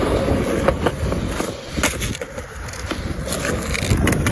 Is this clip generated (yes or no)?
no